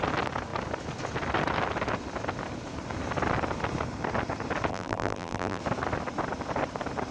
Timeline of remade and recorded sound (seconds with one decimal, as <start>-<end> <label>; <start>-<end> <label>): 0.0-4.7 recorded; 4.7-5.6 remade; 5.6-7.1 recorded